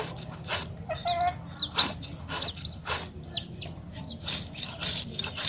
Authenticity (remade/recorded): recorded